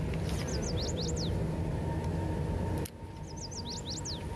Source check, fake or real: real